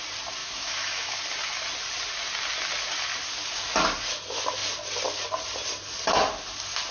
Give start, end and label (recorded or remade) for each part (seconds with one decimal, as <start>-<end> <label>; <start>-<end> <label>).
0.0-0.4 recorded; 0.4-1.2 remade; 1.2-6.9 recorded

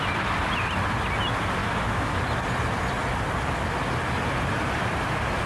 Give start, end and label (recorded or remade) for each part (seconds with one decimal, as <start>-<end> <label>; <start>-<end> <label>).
0.0-1.6 recorded; 1.6-2.2 remade; 2.2-5.5 recorded

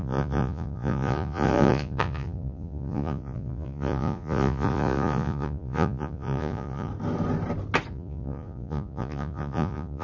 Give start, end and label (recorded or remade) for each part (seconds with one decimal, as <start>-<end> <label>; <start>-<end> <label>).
0.0-6.9 remade; 6.9-7.9 recorded; 7.9-10.0 remade

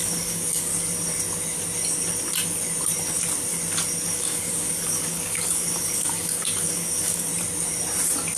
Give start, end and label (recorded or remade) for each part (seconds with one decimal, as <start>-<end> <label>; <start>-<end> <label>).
0.0-0.7 remade; 0.7-4.1 recorded; 4.1-7.3 remade; 7.3-8.4 recorded

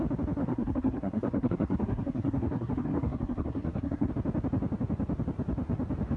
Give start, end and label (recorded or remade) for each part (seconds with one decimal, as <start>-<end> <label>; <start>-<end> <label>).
0.0-0.4 recorded; 0.4-4.1 remade; 4.1-6.2 recorded

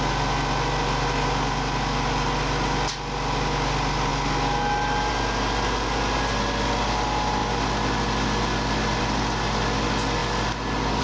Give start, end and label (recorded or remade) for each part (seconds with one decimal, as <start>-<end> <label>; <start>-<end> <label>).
0.0-4.1 recorded; 4.1-5.1 remade; 5.1-7.4 recorded; 7.4-9.0 remade; 9.0-11.0 recorded

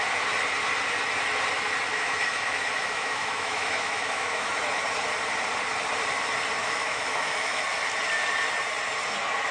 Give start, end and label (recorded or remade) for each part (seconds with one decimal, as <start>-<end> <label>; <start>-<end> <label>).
0.0-1.9 recorded; 1.9-4.5 remade; 4.5-6.6 recorded; 6.6-7.6 remade; 7.6-9.5 recorded

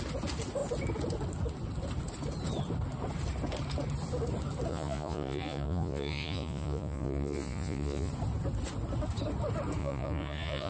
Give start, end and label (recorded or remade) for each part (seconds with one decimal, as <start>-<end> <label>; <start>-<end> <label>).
0.0-4.7 recorded; 4.7-8.1 remade; 8.1-9.8 recorded; 9.8-10.7 remade